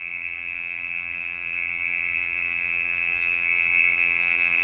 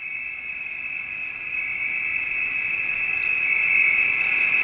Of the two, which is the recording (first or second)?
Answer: second